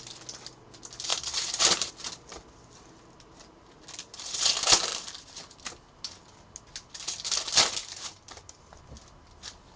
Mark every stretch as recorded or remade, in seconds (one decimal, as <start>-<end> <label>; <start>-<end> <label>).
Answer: 0.0-1.1 recorded; 1.1-1.9 remade; 1.9-2.3 recorded; 2.3-4.4 remade; 4.4-4.9 recorded; 4.9-5.4 remade; 5.4-7.8 recorded; 7.8-8.6 remade; 8.6-9.8 recorded